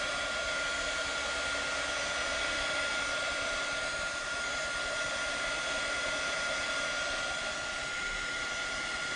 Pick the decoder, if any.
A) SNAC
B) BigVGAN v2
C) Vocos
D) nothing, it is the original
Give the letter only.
D